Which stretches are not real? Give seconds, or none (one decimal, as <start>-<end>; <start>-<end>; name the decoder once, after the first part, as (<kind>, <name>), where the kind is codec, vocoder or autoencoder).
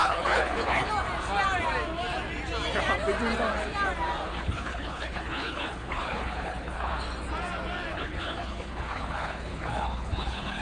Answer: 0.0-0.9 (codec, HILCodec); 4.3-6.9; 7.9-10.6